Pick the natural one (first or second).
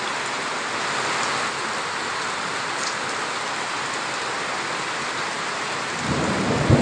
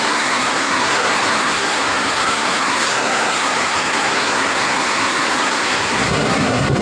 first